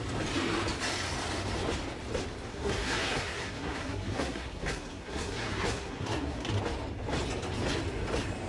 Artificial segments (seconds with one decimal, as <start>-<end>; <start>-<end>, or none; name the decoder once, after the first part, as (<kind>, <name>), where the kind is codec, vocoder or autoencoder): 2.5-6.5 (codec, SNAC)